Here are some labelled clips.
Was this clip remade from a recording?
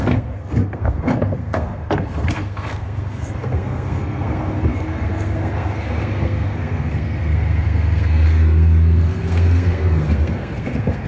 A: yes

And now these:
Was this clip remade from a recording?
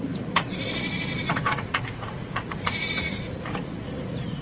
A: yes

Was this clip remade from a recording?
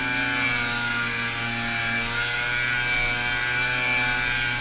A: no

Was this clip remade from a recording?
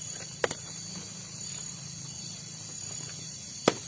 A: no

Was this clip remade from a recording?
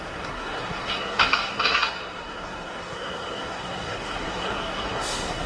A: yes